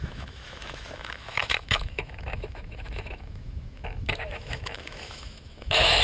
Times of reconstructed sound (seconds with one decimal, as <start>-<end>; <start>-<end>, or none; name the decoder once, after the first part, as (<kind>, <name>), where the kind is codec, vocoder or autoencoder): 0.0-6.0 (autoencoder, DAC-VAE)

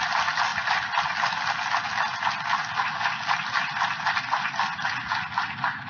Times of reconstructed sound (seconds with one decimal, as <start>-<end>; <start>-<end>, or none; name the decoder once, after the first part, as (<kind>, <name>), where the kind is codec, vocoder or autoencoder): none